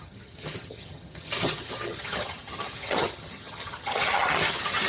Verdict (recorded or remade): remade